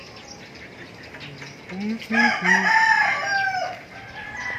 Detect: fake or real real